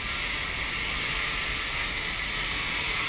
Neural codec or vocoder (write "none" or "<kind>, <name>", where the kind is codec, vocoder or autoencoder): none